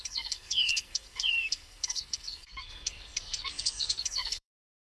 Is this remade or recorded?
remade